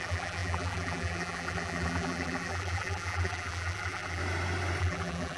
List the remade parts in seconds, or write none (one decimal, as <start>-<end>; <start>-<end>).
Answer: 0.0-4.2; 4.8-5.4